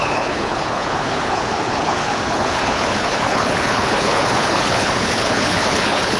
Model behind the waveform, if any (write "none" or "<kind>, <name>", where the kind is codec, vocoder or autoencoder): codec, HILCodec